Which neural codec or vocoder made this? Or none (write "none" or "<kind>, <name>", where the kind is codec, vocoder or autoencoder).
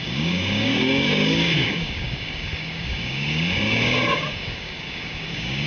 codec, DAC